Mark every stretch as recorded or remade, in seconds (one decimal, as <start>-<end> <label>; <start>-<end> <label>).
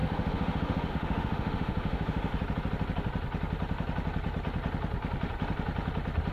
0.0-2.3 remade; 2.3-6.3 recorded